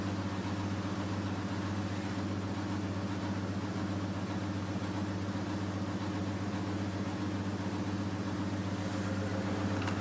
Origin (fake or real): real